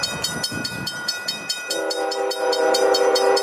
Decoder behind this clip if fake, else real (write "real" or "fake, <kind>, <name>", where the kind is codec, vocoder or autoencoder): fake, vocoder, BigVGAN v2